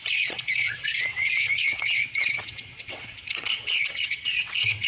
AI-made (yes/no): yes